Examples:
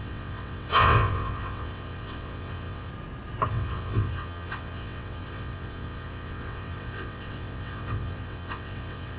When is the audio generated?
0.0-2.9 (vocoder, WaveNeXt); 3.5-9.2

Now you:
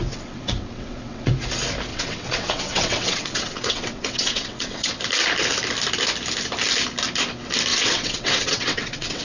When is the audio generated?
0.0-1.3 (vocoder, WaveNeXt); 1.9-4.9; 7.7-9.2

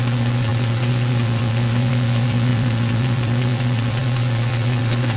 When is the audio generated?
0.0-5.2 (vocoder, WaveNeXt)